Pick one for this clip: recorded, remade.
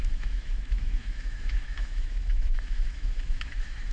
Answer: remade